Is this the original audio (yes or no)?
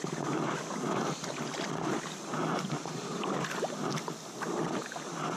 yes